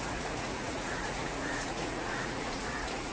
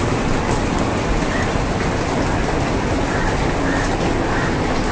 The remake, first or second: first